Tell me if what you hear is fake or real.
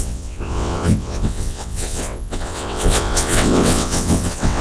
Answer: fake